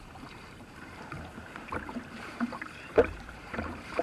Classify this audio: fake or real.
fake